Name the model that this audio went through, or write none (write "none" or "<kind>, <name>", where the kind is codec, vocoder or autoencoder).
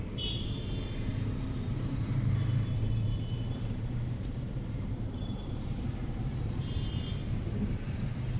vocoder, BigVGAN v2